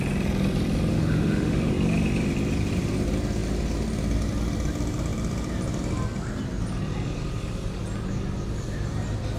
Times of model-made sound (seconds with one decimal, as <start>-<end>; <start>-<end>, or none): 0.9-1.7